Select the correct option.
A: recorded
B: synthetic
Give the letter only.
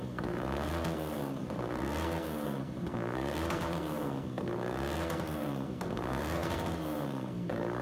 B